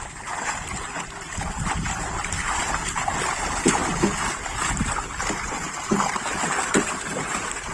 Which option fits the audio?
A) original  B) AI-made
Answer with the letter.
A